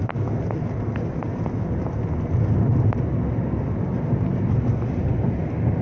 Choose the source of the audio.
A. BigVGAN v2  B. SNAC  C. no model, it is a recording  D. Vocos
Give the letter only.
C